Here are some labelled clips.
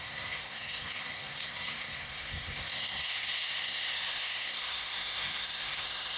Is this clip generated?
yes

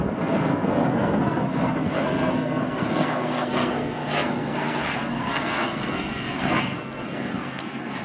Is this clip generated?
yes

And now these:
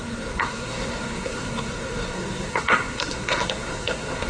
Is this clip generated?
yes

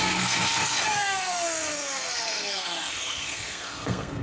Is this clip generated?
yes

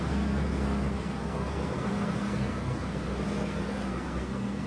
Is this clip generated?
yes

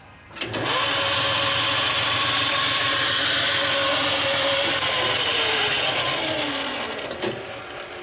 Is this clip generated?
no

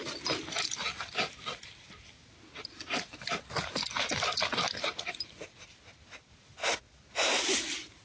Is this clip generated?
no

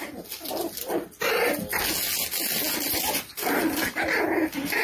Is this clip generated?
no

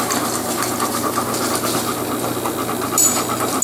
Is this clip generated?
no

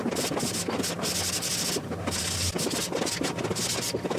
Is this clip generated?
no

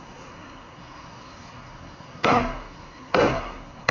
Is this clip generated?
yes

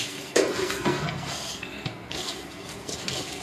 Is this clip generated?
yes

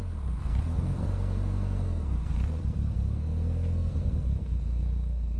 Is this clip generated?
yes